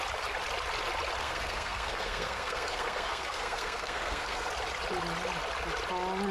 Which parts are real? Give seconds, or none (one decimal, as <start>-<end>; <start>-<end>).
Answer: 0.0-1.2; 4.5-6.3